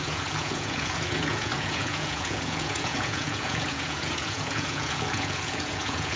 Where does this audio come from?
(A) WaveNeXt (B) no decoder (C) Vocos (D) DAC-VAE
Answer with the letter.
C